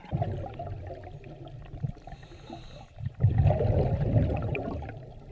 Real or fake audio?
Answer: real